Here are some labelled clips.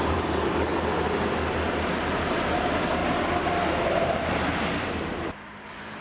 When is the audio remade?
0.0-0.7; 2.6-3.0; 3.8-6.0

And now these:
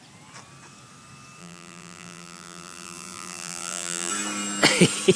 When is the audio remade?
1.4-4.1

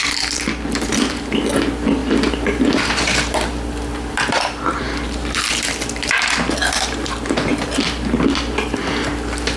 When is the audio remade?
2.0-5.5; 6.6-7.1; 7.5-8.0